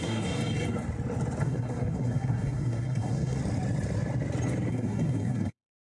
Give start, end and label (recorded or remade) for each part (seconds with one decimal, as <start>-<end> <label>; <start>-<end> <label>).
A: 0.0-0.4 remade; 0.4-1.4 recorded; 1.4-3.4 remade; 3.4-4.7 recorded; 4.7-5.8 remade